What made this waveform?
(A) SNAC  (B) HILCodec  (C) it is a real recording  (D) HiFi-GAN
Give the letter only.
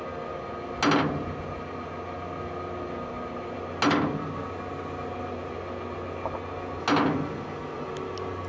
C